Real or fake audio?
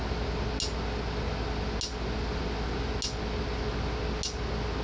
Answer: real